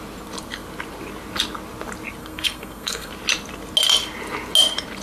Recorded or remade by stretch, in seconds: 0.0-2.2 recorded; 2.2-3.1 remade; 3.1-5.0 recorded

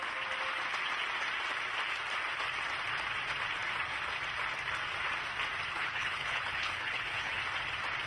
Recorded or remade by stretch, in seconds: 0.0-5.7 recorded; 5.7-7.4 remade; 7.4-8.1 recorded

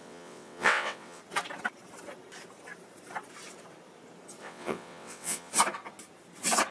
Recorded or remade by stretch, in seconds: 0.0-1.2 remade; 1.2-4.4 recorded; 4.4-5.5 remade; 5.5-6.7 recorded

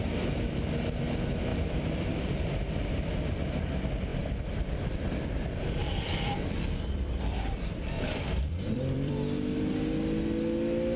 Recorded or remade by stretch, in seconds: 0.0-1.5 recorded; 1.5-2.9 remade; 2.9-4.1 recorded; 4.1-9.1 remade; 9.1-11.0 recorded

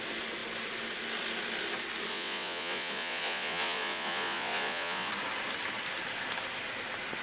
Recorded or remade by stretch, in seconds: 0.0-2.1 recorded; 2.1-5.1 remade; 5.1-7.2 recorded

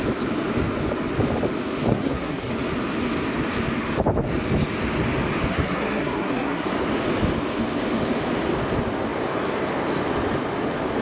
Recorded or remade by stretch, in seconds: 0.0-1.9 recorded; 1.9-2.5 remade; 2.5-5.5 recorded; 5.5-6.7 remade; 6.7-11.0 recorded

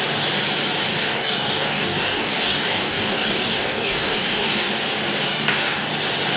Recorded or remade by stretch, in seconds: 0.0-0.9 recorded; 0.9-4.7 remade; 4.7-5.3 recorded; 5.3-5.9 remade; 5.9-6.4 recorded